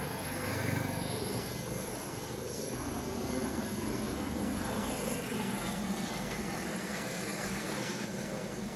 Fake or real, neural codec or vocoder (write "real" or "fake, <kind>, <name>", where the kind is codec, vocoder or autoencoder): fake, codec, SNAC